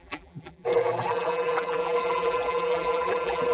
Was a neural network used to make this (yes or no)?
yes